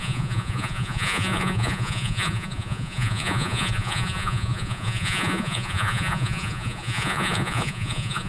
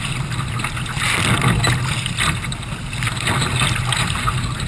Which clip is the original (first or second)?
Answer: second